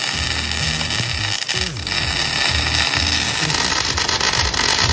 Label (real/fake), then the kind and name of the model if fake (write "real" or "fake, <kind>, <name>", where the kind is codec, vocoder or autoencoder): real